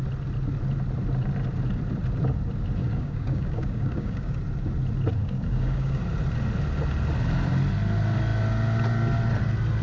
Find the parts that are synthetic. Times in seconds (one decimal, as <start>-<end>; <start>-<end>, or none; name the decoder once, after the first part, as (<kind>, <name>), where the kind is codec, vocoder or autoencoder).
2.8-4.4 (codec, DAC); 5.2-6.0